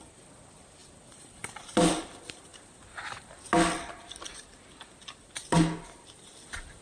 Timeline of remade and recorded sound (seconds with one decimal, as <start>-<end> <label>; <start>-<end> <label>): 0.0-6.8 recorded